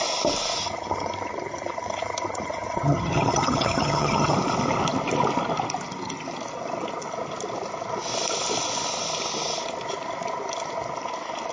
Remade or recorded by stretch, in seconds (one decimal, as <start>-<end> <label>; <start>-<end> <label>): 0.0-0.6 recorded; 0.6-4.3 remade; 4.3-11.5 recorded